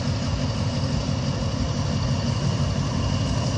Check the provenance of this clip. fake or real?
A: real